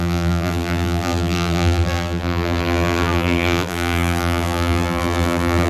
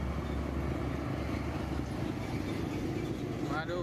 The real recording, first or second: second